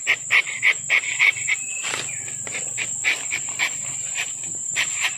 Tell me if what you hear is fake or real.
fake